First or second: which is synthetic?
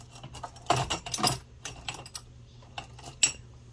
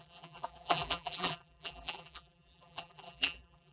second